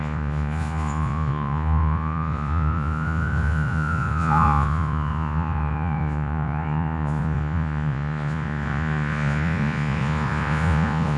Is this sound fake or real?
fake